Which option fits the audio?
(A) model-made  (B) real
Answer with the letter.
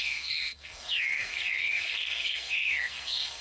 A